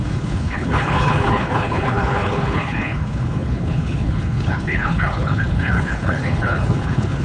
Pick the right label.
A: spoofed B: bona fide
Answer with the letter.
A